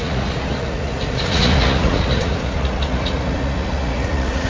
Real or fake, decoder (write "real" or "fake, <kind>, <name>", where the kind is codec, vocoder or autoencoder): fake, vocoder, Vocos